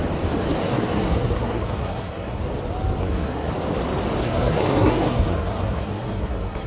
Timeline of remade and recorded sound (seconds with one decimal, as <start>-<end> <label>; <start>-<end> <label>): 0.0-0.6 recorded; 0.6-2.4 remade; 2.4-3.0 recorded; 3.0-3.5 remade; 3.5-4.2 recorded; 4.2-6.7 remade